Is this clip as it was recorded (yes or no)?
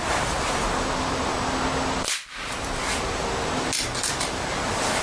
yes